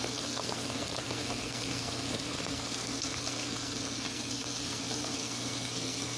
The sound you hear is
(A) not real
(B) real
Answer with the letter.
A